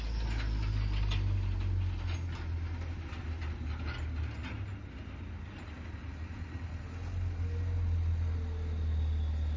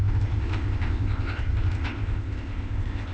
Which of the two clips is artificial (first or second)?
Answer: second